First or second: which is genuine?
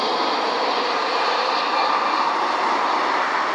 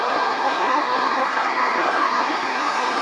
first